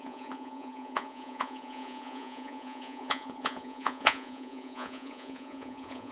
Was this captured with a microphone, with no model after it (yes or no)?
no